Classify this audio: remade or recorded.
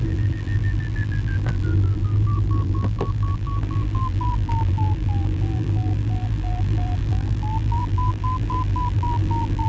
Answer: remade